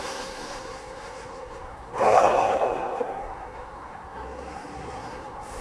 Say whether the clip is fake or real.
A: fake